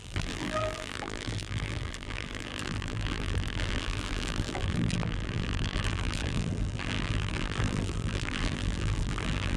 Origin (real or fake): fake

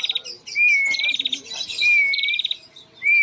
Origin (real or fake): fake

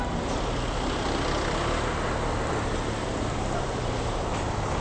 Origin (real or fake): real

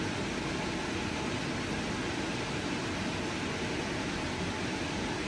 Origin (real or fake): real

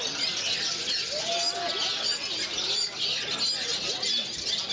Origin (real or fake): real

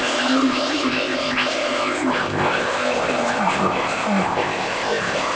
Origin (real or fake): fake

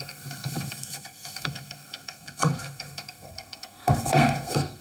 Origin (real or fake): fake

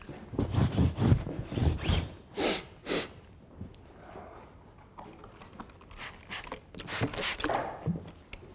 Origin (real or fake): real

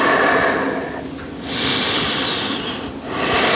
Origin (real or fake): real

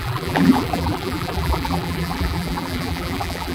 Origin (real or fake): fake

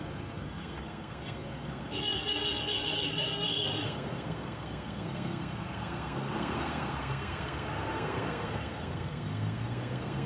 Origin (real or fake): fake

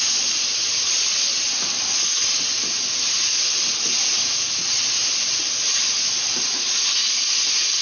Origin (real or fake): real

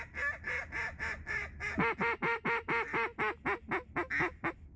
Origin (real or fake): real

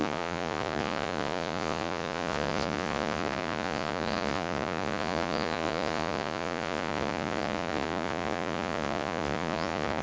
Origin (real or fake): fake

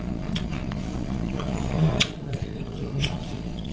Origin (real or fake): fake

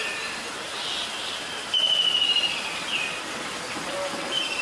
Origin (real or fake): real